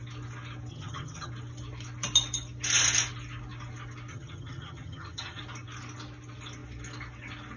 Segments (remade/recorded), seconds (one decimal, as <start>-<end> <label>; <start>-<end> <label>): 0.0-0.7 recorded; 0.7-1.3 remade; 1.3-4.1 recorded; 4.1-5.4 remade; 5.4-7.6 recorded